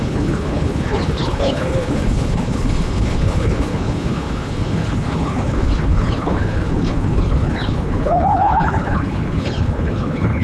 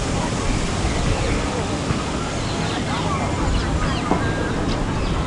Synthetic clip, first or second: first